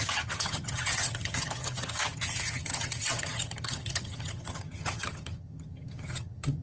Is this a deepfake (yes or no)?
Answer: yes